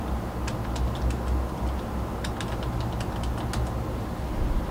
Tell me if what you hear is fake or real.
real